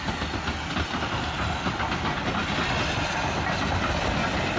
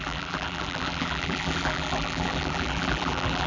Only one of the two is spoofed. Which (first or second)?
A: second